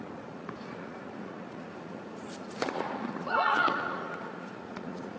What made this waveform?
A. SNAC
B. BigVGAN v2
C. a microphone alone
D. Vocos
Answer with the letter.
D